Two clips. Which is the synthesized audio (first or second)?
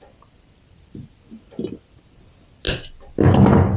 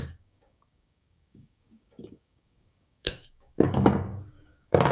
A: second